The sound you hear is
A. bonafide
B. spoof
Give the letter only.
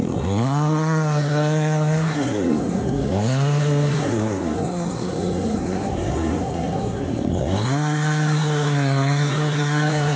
B